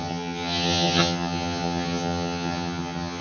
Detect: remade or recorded remade